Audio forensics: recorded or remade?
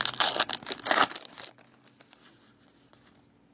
recorded